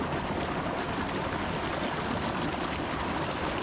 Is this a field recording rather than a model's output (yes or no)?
yes